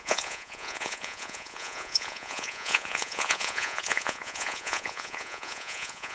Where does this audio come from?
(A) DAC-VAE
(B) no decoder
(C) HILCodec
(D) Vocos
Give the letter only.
D